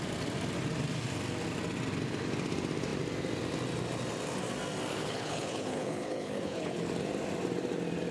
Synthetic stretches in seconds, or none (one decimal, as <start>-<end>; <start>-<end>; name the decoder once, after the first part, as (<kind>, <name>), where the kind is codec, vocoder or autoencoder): 4.9-6.9 (codec, HILCodec)